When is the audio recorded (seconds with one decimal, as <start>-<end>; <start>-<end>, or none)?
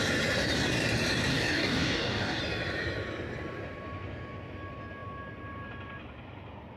0.0-1.3; 2.4-6.8